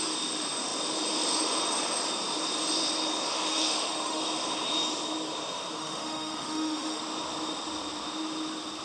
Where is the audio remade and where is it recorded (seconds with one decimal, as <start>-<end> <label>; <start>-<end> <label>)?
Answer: 0.0-3.5 recorded; 3.5-4.2 remade; 4.2-5.8 recorded; 5.8-7.0 remade; 7.0-8.8 recorded